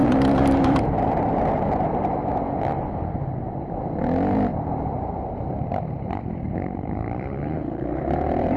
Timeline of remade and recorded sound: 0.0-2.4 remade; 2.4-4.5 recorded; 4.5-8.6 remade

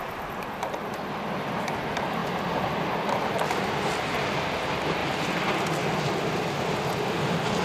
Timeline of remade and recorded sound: 0.0-5.0 recorded; 5.0-5.5 remade; 5.5-7.6 recorded

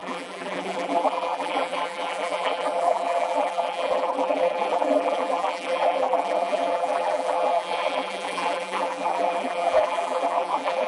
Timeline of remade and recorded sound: 0.0-10.9 remade

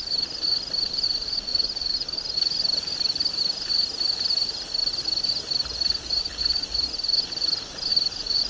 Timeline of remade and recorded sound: 0.0-1.5 recorded; 1.5-2.2 remade; 2.2-7.9 recorded; 7.9-8.5 remade